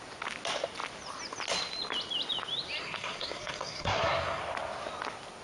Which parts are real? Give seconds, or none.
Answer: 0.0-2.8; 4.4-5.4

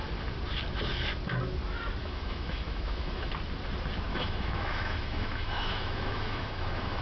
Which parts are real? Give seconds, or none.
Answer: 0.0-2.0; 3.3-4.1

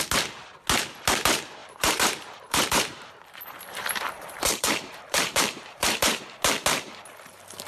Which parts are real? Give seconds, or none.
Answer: 0.0-1.6; 6.2-7.7

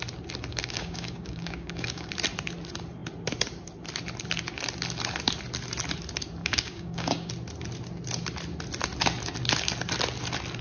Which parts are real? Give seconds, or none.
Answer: 0.0-0.5; 2.1-6.4; 7.3-10.6